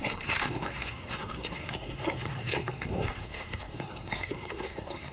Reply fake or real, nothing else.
fake